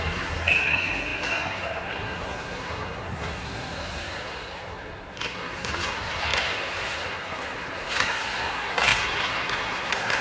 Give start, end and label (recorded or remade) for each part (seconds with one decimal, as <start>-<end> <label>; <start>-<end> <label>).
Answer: 0.0-10.2 remade